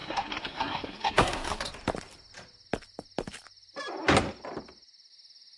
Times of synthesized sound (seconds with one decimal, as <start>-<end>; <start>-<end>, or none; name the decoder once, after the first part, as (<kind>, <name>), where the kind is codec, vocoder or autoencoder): 0.0-1.7 (codec, SNAC)